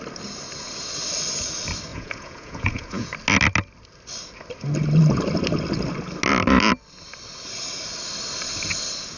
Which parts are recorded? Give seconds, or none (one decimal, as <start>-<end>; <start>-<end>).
0.0-1.9; 3.1-9.2